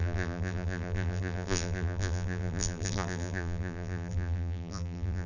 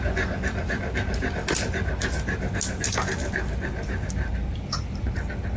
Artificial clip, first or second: first